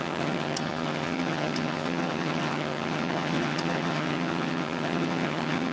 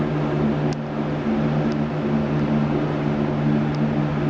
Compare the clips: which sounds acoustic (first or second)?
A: second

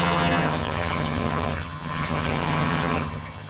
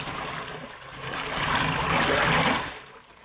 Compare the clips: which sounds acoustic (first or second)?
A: second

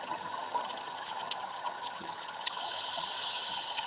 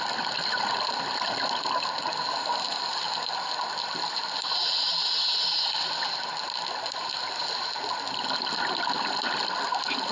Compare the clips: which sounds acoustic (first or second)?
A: second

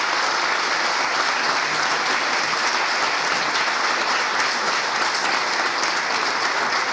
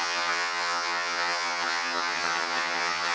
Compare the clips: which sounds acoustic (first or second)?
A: first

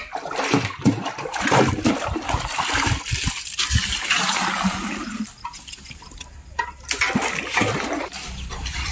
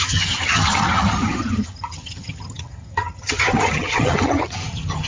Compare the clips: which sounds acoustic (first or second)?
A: first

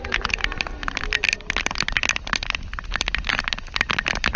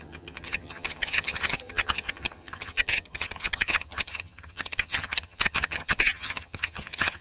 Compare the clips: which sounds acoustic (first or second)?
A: first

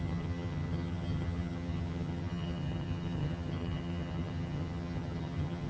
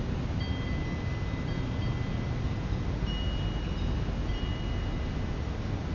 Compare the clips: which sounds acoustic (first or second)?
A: second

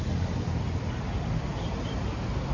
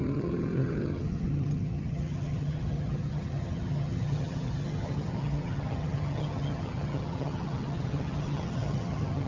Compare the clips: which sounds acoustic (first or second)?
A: first